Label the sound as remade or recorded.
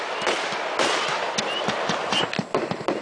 recorded